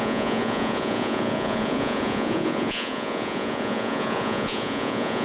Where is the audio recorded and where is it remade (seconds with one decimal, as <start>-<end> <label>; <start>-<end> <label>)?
0.0-5.2 remade